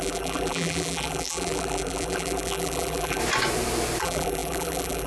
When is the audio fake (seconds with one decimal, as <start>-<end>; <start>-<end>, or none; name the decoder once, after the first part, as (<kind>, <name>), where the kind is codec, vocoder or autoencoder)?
0.0-3.2 (vocoder, BigVGAN v2); 4.0-5.1